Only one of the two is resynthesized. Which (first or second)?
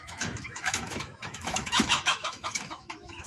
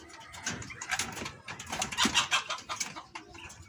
first